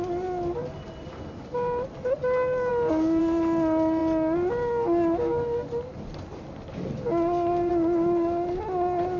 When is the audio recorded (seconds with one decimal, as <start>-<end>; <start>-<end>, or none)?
0.0-9.2